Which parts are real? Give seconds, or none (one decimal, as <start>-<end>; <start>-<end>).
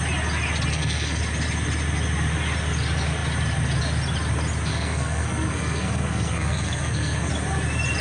0.0-0.7; 1.2-4.7; 7.3-8.0